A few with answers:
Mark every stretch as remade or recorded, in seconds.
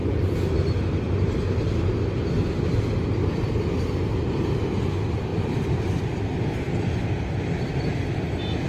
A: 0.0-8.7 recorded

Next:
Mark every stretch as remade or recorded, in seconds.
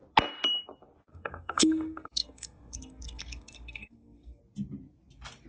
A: 0.0-1.1 recorded; 1.1-4.4 remade; 4.4-5.5 recorded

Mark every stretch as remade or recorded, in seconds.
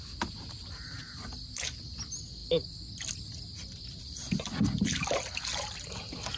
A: 0.0-6.4 recorded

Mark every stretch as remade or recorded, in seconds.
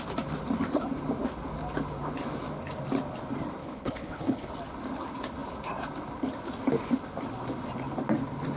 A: 0.0-3.6 recorded; 3.6-4.5 remade; 4.5-8.6 recorded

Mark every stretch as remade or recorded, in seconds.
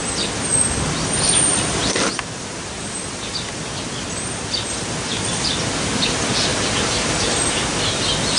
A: 0.0-1.8 recorded; 1.8-3.5 remade; 3.5-5.1 recorded; 5.1-6.0 remade; 6.0-6.5 recorded; 6.5-8.0 remade; 8.0-8.4 recorded